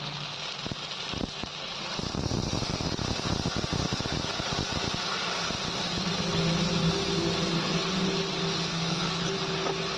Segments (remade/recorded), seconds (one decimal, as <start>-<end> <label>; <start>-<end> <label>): 0.0-8.7 recorded; 8.7-9.2 remade; 9.2-10.0 recorded